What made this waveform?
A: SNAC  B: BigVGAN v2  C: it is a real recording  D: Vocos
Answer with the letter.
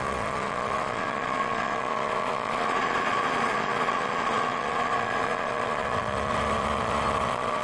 D